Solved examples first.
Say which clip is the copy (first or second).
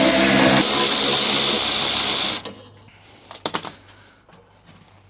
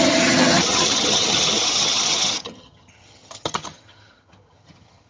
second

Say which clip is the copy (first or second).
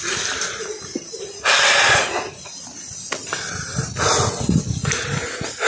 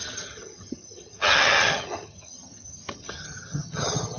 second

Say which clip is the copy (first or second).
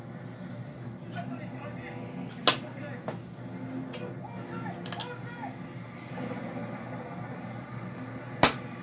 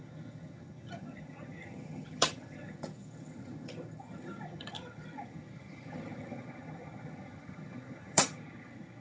second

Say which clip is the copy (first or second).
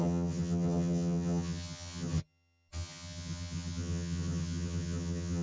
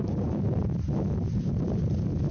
first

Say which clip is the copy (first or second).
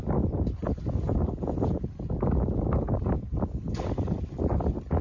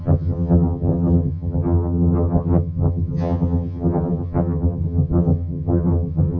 second